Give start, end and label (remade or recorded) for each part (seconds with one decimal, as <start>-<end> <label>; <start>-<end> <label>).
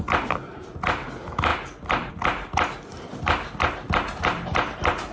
0.0-5.1 recorded